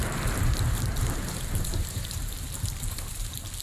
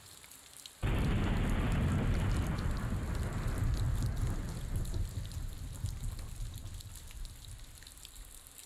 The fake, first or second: first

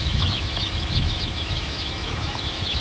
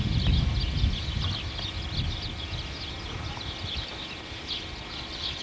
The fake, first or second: first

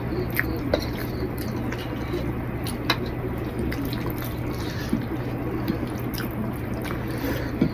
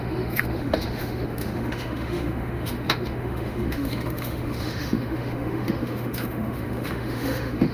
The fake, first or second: second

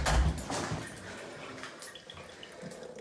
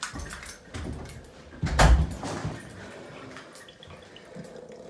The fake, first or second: second